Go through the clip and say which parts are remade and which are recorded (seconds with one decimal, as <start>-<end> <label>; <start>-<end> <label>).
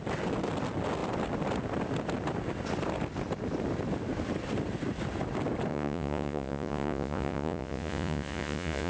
0.0-5.7 recorded; 5.7-8.9 remade